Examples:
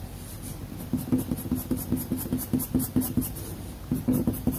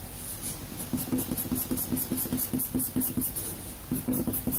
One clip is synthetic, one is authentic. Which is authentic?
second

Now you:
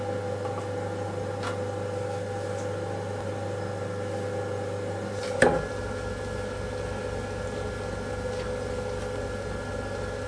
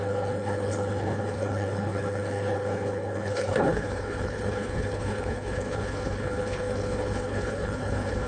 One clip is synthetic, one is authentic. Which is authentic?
first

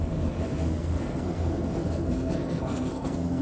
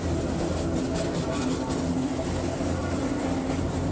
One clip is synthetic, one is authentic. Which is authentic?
second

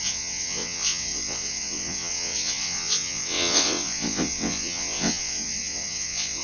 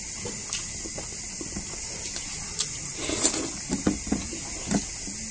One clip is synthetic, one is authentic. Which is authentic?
second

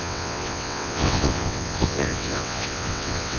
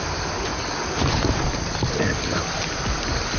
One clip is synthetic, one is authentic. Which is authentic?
second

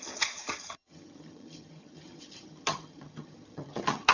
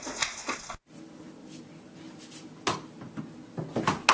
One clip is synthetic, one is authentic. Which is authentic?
second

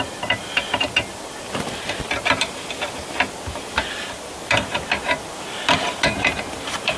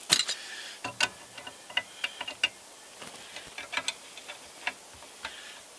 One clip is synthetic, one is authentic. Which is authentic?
second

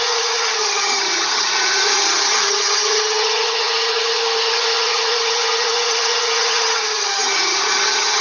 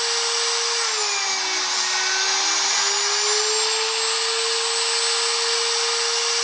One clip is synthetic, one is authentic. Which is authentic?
second